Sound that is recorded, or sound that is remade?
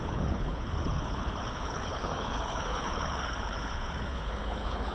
remade